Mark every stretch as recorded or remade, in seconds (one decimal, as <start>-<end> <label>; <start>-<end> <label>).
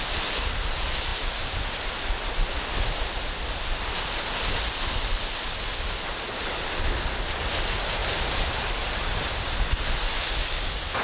0.0-11.0 recorded